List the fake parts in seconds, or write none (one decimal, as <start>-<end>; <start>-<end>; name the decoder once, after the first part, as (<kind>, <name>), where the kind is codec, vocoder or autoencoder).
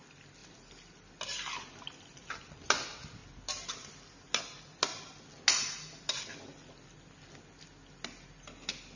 none